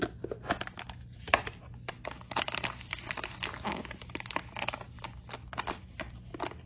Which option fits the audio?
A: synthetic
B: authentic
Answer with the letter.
B